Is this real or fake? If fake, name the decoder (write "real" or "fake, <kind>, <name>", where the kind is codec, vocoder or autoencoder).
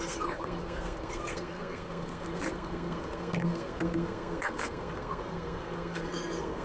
fake, codec, SNAC